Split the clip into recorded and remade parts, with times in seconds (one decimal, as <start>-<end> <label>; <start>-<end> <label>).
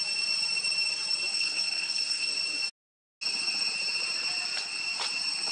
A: 0.0-1.3 recorded; 1.3-2.3 remade; 2.3-5.5 recorded